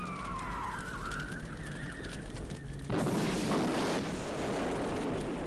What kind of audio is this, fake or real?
real